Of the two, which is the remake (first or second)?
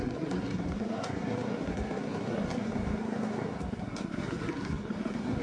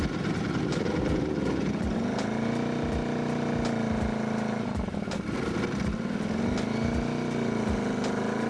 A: first